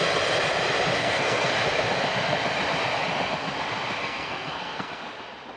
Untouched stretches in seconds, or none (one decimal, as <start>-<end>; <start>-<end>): 0.0-1.0; 1.5-4.0; 5.0-5.6